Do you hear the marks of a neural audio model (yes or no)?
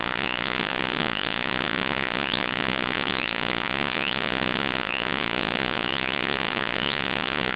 yes